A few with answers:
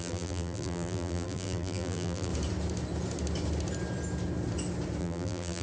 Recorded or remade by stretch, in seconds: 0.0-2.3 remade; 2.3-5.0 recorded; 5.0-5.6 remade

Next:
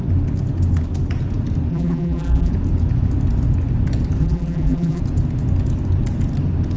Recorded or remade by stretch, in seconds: 0.0-1.7 recorded; 1.7-2.5 remade; 2.5-4.2 recorded; 4.2-5.0 remade; 5.0-6.8 recorded

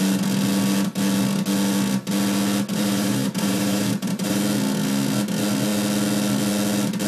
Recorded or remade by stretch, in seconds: 0.0-2.7 recorded; 2.7-4.4 remade; 4.4-7.1 recorded